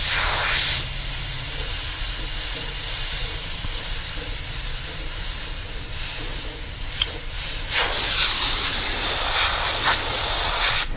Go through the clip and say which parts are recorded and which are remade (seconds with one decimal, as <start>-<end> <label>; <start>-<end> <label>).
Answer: 0.0-10.1 recorded; 10.1-11.0 remade